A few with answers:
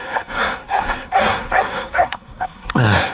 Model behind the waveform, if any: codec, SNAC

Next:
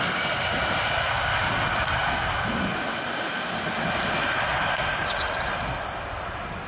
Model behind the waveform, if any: none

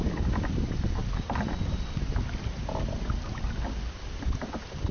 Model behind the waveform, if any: none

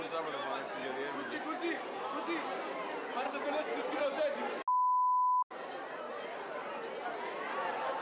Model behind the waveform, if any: none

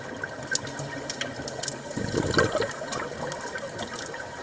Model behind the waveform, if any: none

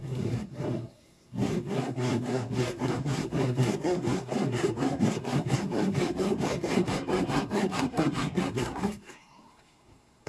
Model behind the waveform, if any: codec, SNAC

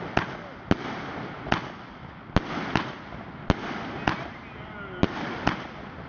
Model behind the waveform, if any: none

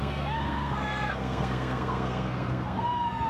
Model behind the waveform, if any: codec, SNAC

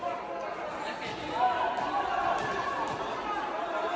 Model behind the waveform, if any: none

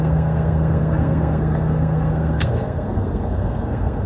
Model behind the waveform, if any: codec, SNAC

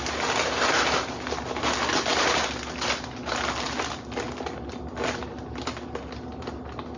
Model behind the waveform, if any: none